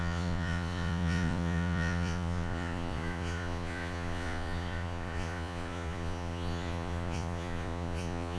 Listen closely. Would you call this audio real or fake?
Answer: fake